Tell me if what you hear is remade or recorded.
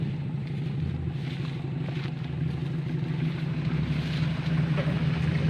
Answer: recorded